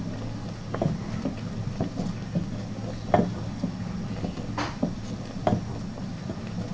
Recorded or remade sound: recorded